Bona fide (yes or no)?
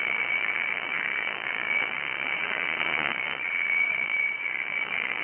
no